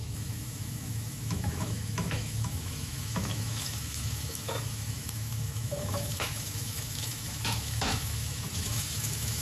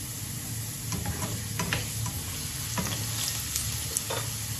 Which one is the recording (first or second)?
second